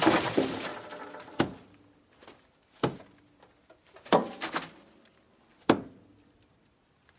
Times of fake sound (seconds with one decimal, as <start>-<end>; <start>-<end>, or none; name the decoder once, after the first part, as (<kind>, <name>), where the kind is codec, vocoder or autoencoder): none